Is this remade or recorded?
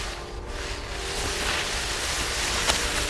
recorded